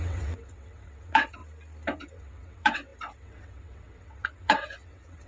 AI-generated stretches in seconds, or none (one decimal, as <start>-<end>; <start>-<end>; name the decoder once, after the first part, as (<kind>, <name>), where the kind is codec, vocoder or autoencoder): 0.0-1.4 (vocoder, WaveNeXt); 2.0-5.3